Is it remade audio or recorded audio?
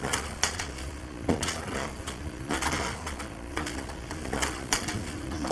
remade